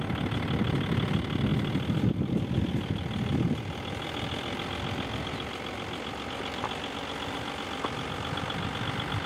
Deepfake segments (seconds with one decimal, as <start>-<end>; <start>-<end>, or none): none